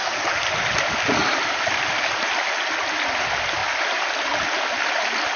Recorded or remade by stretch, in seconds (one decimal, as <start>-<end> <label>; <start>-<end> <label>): 0.0-5.4 recorded